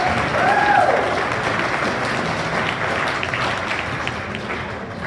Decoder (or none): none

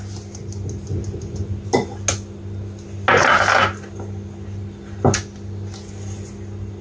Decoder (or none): none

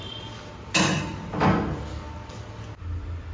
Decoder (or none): none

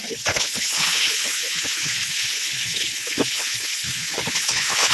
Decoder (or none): codec, HILCodec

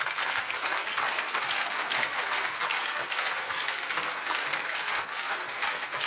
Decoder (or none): codec, SNAC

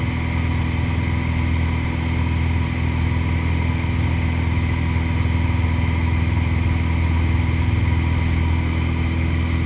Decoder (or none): none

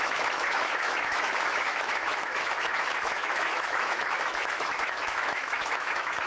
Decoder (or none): autoencoder, DAC-VAE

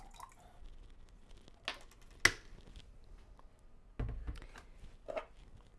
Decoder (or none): none